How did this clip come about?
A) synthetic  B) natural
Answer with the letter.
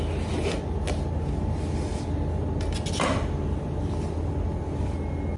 B